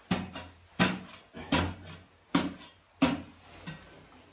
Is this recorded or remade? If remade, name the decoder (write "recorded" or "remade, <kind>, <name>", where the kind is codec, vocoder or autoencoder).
recorded